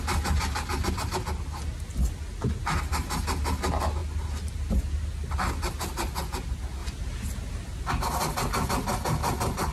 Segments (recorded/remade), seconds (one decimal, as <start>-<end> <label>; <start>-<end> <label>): 0.0-9.7 recorded